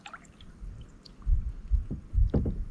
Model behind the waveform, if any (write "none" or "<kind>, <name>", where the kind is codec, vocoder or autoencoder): none